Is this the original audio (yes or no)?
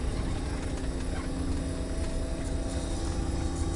yes